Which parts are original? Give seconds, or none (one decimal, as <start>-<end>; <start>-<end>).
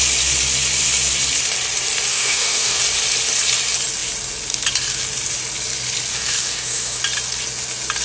0.0-2.1; 2.8-6.1; 7.0-8.0